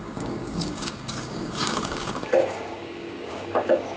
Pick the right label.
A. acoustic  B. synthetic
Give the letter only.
B